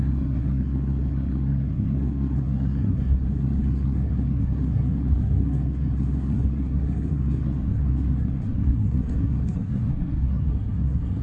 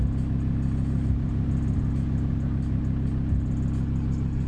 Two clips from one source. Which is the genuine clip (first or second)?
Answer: second